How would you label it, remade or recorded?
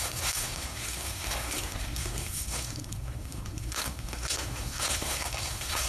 remade